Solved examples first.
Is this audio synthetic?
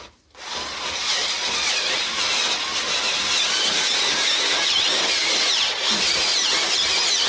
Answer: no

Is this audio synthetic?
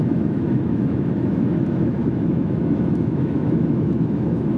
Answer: yes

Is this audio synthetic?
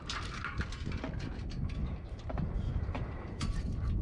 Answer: no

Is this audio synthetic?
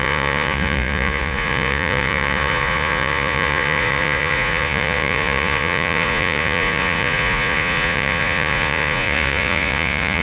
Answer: yes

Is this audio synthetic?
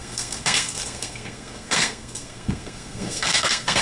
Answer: yes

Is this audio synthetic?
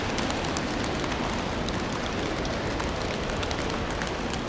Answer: no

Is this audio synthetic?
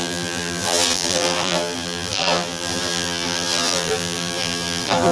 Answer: yes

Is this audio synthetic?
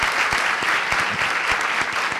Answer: no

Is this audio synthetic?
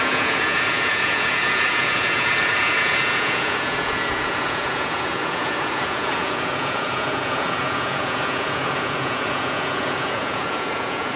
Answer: yes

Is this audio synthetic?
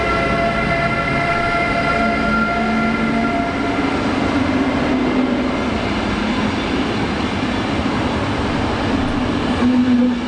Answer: no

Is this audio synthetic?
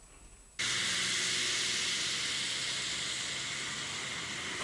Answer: no